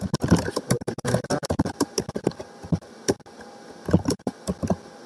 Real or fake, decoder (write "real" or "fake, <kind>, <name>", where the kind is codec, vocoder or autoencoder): real